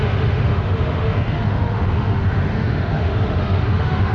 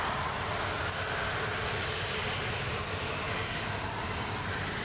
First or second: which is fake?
first